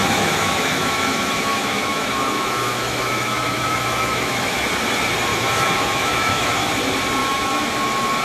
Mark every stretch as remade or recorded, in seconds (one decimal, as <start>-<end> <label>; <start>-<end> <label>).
0.0-4.7 remade; 4.7-5.3 recorded; 5.3-6.7 remade; 6.7-7.2 recorded; 7.2-7.7 remade; 7.7-8.2 recorded